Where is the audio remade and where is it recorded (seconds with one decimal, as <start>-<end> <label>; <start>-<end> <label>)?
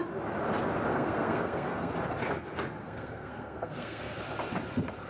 0.0-0.9 recorded; 0.9-1.9 remade; 1.9-2.8 recorded; 2.8-4.2 remade; 4.2-5.1 recorded